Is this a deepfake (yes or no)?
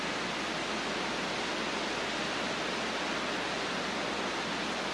no